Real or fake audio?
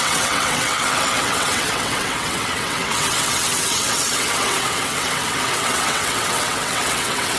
fake